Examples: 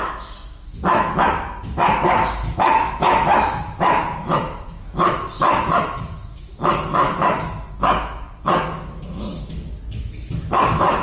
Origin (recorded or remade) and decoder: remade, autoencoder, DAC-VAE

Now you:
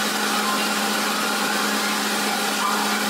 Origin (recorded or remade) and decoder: recorded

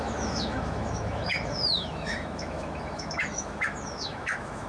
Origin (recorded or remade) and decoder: remade, autoencoder, DAC-VAE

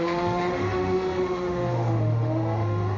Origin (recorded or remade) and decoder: remade, autoencoder, DAC-VAE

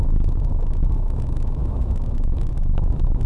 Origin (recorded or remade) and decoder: remade, autoencoder, DAC-VAE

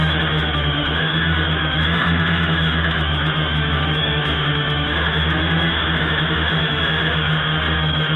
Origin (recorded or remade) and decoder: remade, autoencoder, DAC-VAE